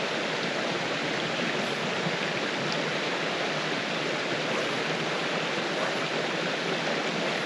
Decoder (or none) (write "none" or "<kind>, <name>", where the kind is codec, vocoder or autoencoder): none